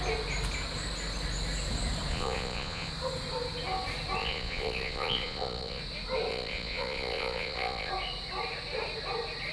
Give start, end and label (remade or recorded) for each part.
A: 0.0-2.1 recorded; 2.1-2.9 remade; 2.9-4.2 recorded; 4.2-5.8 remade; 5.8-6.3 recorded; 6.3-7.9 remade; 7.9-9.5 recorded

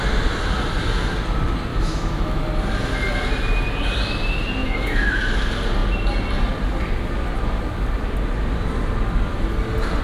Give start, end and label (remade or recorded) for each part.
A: 0.0-1.7 recorded; 1.7-2.4 remade; 2.4-4.6 recorded; 4.6-5.2 remade; 5.2-10.0 recorded

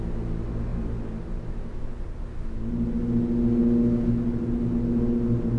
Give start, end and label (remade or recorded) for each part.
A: 0.0-5.6 recorded